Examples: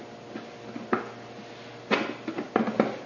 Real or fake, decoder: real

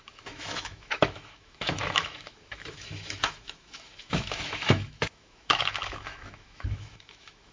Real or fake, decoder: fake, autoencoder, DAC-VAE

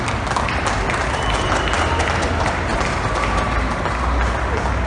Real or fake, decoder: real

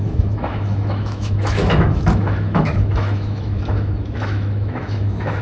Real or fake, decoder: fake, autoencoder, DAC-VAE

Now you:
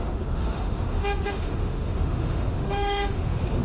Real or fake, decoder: fake, autoencoder, DAC-VAE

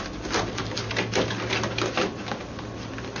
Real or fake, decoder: real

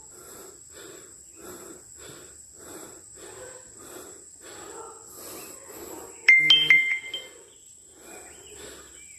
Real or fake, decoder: real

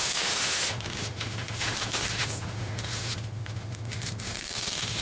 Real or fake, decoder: fake, autoencoder, DAC-VAE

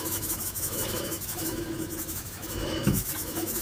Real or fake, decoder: fake, autoencoder, DAC-VAE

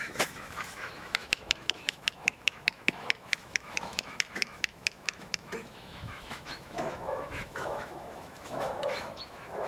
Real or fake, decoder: fake, autoencoder, DAC-VAE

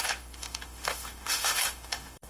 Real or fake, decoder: fake, autoencoder, DAC-VAE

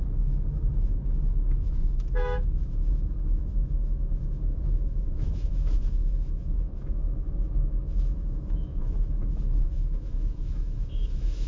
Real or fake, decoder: fake, autoencoder, DAC-VAE